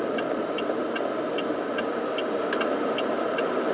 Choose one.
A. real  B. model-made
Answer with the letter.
A